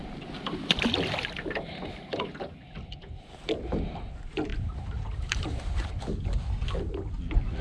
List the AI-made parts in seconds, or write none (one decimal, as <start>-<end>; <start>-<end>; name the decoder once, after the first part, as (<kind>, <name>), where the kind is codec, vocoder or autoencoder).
4.5-5.9 (vocoder, BigVGAN v2)